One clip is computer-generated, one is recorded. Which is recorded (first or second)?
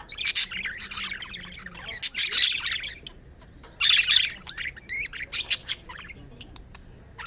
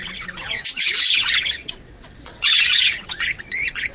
first